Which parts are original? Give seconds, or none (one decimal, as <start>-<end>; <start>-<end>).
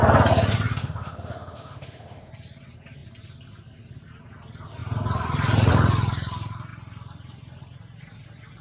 0.0-0.8; 2.3-8.6